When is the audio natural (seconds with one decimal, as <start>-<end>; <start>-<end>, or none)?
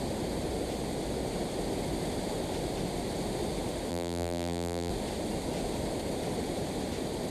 0.0-3.9; 4.9-7.3